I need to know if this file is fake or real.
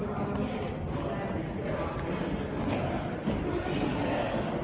real